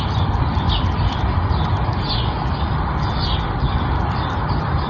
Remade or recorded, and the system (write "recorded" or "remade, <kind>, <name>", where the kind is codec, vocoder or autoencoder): recorded